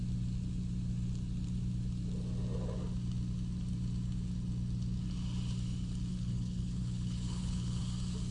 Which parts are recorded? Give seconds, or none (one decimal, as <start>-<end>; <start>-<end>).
0.0-6.1; 7.8-8.3